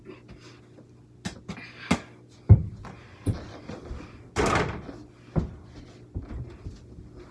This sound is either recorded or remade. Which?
recorded